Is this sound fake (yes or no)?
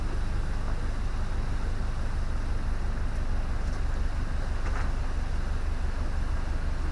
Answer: no